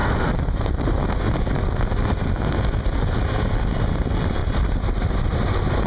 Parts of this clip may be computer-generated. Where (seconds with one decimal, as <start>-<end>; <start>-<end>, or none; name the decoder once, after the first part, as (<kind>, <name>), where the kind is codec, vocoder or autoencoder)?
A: 4.4-5.4 (vocoder, BigVGAN v2)